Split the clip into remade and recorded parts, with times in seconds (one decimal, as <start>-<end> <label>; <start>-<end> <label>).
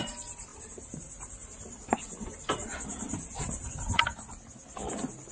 0.0-0.5 recorded; 0.5-3.7 remade; 3.7-5.3 recorded